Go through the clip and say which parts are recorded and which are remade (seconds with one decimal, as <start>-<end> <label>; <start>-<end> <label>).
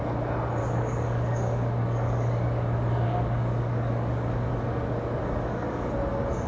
0.0-0.6 recorded; 0.6-4.5 remade; 4.5-5.2 recorded; 5.2-5.9 remade; 5.9-6.5 recorded